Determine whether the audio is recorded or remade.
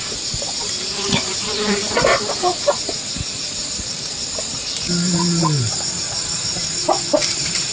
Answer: remade